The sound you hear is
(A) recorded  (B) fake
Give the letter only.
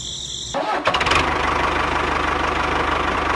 A